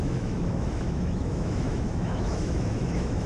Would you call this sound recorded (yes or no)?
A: no